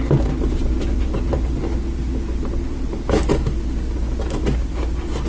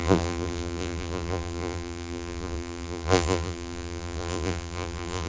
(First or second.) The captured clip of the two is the first